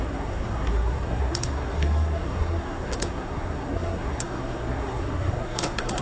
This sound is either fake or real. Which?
fake